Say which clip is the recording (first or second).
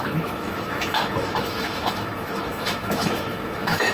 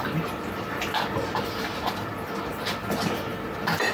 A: second